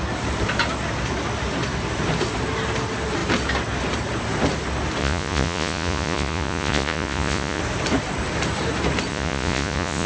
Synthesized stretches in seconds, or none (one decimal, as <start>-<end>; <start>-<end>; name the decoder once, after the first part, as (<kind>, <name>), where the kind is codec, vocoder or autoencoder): 5.0-7.6 (vocoder, Vocos); 9.1-10.1